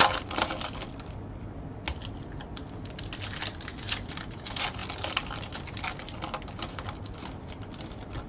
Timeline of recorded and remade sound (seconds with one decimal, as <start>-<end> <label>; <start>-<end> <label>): 0.0-8.3 recorded